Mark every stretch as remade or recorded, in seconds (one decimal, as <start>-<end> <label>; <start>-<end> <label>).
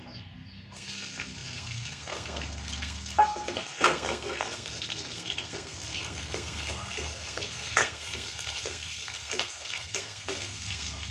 0.0-11.1 remade